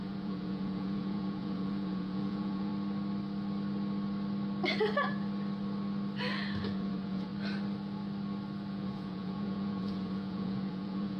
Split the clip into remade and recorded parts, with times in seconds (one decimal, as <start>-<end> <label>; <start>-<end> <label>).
0.0-2.7 remade; 2.7-6.6 recorded; 6.6-7.3 remade; 7.3-8.7 recorded; 8.7-11.2 remade